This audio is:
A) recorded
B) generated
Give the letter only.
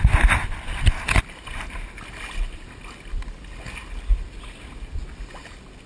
A